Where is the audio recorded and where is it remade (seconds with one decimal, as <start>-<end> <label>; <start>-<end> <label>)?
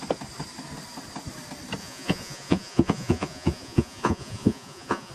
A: 0.0-1.8 recorded; 1.8-5.1 remade